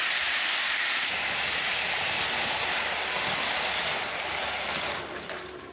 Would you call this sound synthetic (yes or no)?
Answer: no